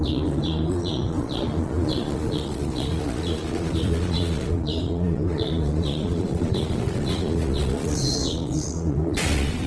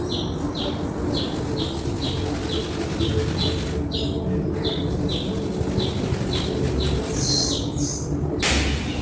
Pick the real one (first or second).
second